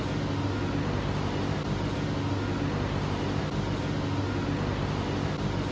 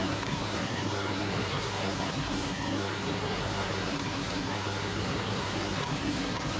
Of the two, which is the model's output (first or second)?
second